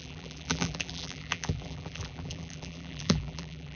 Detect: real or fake fake